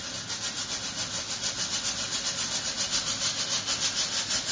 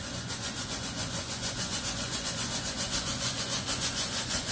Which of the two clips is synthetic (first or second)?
second